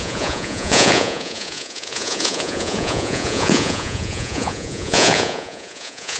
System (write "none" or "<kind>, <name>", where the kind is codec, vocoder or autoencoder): vocoder, Vocos